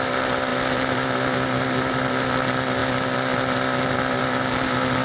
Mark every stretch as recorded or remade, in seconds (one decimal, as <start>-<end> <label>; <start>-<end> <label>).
0.0-5.0 recorded